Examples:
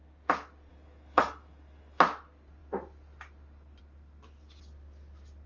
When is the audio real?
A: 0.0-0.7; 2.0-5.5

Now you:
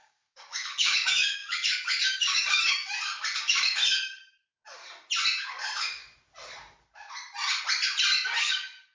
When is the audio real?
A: 4.8-5.5; 6.0-8.4

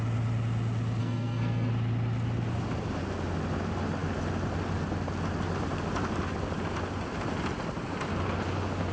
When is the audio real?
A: 0.0-1.0; 1.7-8.9

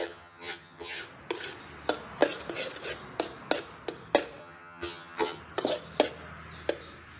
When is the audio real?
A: 1.0-4.4; 5.4-7.2

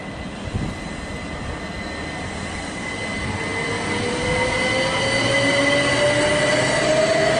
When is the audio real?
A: 0.0-7.4

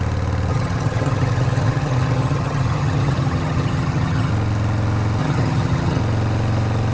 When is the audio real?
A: 0.0-0.5; 4.3-5.2; 6.0-6.9

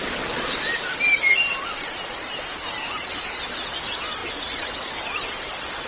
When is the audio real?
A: 0.0-5.9